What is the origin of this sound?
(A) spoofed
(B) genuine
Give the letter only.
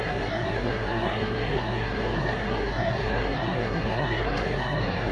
A